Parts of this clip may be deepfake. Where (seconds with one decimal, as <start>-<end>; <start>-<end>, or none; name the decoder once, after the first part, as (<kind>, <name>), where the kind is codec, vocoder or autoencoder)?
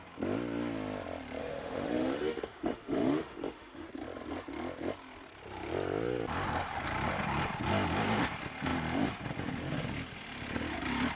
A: 1.4-3.9 (autoencoder, DAC-VAE)